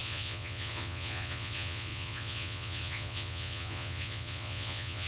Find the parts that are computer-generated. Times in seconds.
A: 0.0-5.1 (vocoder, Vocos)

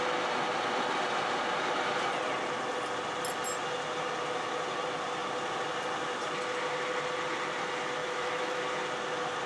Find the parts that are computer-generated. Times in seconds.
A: 8.0-8.6 (autoencoder, DAC-VAE)